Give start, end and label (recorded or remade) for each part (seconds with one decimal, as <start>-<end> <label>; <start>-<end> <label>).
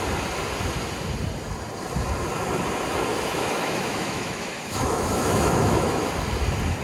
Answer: 0.0-3.1 recorded; 3.1-6.1 remade; 6.1-6.8 recorded